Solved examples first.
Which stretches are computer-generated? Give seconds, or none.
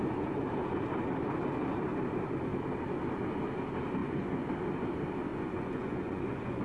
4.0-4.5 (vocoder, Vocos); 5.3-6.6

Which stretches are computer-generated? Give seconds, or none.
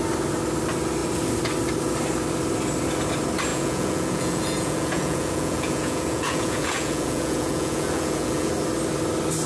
3.5-8.5 (vocoder, Vocos)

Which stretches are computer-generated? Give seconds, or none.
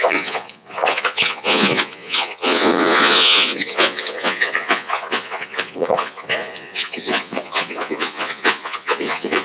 0.0-9.4 (vocoder, Vocos)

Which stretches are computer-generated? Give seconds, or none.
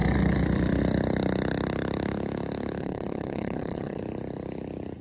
2.8-4.0 (vocoder, Vocos)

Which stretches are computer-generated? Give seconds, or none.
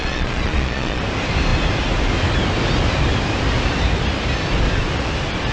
0.0-1.0 (vocoder, Vocos)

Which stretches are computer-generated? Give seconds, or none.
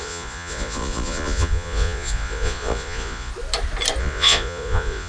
0.0-3.3 (vocoder, Vocos); 4.0-5.1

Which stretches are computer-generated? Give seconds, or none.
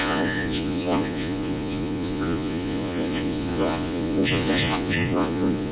0.0-5.7 (vocoder, Vocos)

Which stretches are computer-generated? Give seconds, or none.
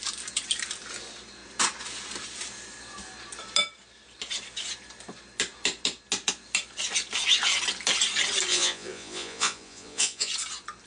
8.5-10.3 (vocoder, Vocos)